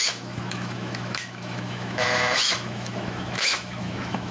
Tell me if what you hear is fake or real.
fake